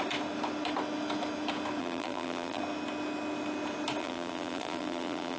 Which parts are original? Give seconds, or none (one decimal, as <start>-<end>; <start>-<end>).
0.0-1.8; 2.6-4.0